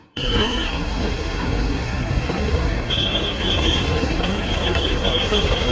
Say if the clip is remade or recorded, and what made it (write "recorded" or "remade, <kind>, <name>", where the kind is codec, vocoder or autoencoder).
remade, codec, SNAC